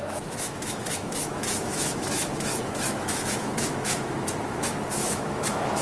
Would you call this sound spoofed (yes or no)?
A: yes